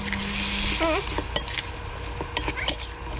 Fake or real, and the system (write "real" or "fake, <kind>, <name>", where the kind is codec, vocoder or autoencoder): real